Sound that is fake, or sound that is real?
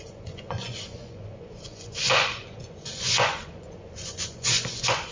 fake